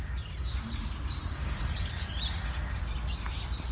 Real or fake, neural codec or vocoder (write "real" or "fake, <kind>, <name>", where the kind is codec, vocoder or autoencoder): real